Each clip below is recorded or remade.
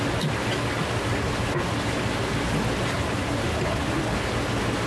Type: recorded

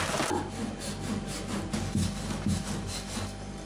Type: recorded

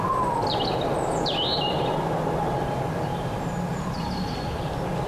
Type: recorded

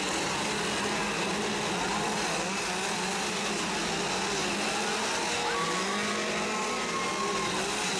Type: recorded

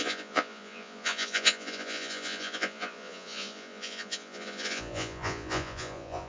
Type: remade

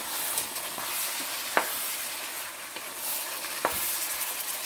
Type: recorded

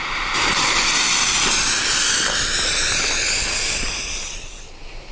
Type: recorded